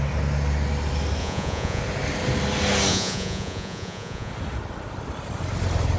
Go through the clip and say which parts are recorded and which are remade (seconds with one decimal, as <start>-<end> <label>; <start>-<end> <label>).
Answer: 0.0-1.2 recorded; 1.2-1.8 remade; 1.8-2.9 recorded; 2.9-4.3 remade; 4.3-6.0 recorded